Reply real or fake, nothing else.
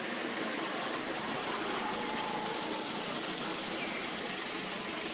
real